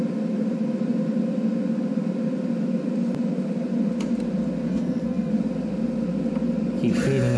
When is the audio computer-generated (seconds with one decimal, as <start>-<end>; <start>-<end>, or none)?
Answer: 4.7-5.3